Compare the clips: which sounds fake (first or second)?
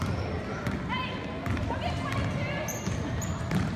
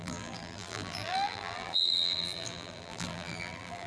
second